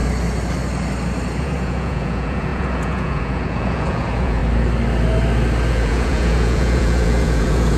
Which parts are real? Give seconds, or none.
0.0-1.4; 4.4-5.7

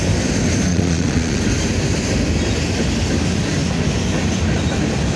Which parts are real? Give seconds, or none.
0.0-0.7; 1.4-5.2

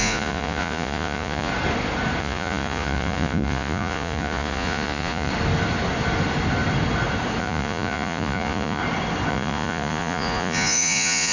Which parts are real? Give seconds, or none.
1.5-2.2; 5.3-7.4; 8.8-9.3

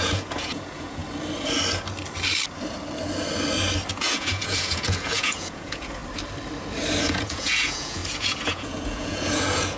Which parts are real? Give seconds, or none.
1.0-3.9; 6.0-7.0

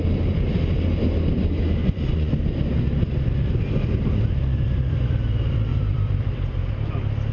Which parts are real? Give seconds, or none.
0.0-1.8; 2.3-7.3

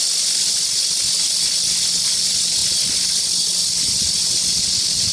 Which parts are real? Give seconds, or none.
0.0-5.1

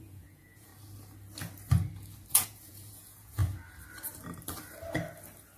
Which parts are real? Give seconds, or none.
0.7-2.3; 3.4-5.6

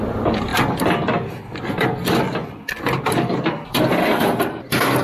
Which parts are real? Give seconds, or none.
0.0-5.0